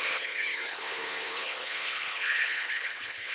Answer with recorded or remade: remade